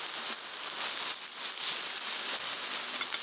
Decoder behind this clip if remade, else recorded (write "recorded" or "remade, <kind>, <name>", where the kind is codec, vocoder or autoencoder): recorded